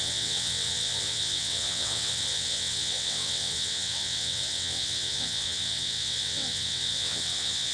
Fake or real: fake